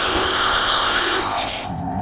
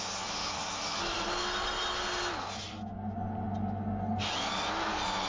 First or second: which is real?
second